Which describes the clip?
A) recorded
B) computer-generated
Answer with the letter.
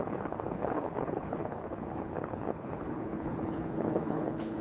B